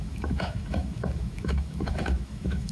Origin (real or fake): fake